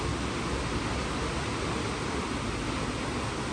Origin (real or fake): real